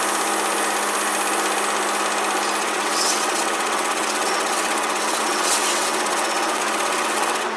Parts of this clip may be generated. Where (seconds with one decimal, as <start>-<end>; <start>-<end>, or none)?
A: 2.6-7.6